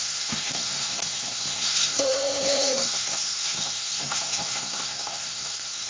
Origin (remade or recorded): remade